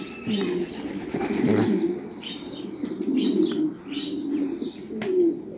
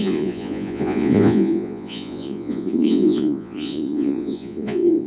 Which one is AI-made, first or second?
second